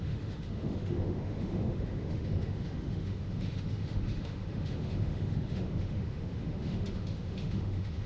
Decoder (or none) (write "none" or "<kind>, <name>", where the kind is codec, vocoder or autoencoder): autoencoder, DAC-VAE